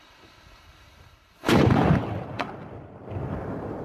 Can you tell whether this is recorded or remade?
remade